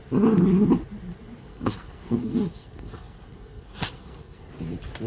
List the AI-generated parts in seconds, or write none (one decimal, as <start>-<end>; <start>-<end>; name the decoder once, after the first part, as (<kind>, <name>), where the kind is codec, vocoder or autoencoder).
1.4-4.5 (codec, SNAC)